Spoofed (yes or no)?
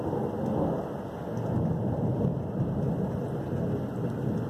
no